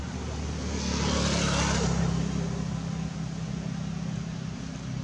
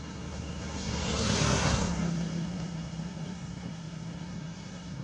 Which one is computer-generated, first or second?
second